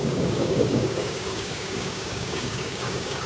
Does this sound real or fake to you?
fake